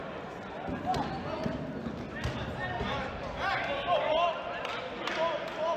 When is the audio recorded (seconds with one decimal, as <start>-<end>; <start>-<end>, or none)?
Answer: 0.0-5.8